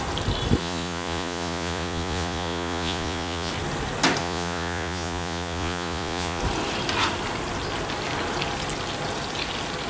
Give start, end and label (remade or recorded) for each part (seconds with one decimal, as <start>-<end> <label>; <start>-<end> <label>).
0.0-0.6 recorded; 0.6-3.5 remade; 3.5-4.2 recorded; 4.2-6.4 remade; 6.4-9.9 recorded